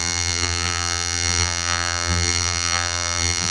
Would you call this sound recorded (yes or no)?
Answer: no